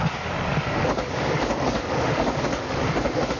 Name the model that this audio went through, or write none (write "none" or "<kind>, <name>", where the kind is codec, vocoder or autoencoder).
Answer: codec, DAC